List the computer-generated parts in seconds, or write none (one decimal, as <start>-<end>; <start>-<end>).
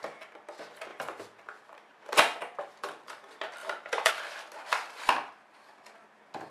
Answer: 0.9-3.2; 3.6-4.1